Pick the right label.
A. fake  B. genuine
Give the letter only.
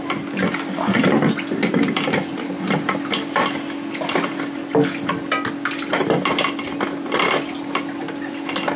B